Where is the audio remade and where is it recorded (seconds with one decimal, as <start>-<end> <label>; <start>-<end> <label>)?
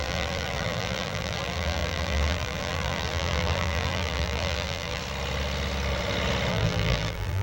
0.0-5.0 remade; 5.0-6.5 recorded; 6.5-7.4 remade